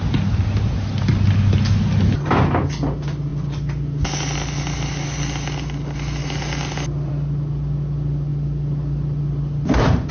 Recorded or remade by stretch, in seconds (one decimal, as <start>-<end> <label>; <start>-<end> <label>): 0.0-10.1 recorded